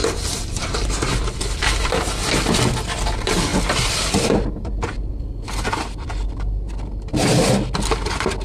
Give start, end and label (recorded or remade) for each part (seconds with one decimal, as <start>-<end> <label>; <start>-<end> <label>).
0.0-1.9 remade; 1.9-3.5 recorded; 3.5-5.4 remade; 5.4-8.4 recorded